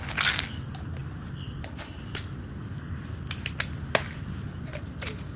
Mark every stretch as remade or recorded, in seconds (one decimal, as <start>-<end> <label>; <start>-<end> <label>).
0.0-5.4 recorded